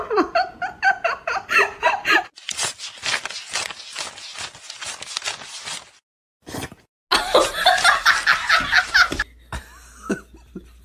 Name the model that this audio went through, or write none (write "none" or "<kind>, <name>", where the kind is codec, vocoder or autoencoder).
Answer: none